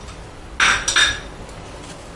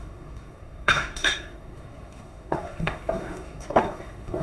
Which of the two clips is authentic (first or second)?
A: first